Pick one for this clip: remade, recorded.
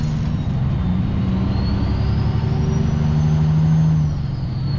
recorded